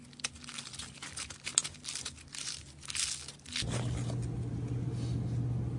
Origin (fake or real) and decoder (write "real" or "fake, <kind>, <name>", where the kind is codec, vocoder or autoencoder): real